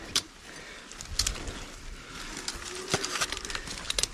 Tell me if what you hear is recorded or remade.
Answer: recorded